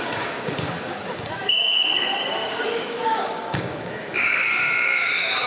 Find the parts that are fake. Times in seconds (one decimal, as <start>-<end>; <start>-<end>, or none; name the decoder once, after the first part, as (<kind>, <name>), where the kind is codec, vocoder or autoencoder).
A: 0.0-5.5 (codec, DAC)